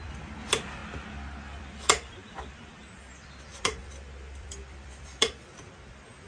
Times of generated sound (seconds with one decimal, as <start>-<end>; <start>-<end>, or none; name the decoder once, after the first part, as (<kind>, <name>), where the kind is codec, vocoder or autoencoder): 0.0-0.8 (vocoder, BigVGAN v2); 1.4-6.3